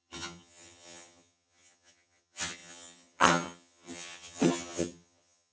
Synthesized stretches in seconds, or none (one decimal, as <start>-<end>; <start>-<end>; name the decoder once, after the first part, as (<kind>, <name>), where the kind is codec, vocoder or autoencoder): 0.0-5.5 (vocoder, HiFi-GAN)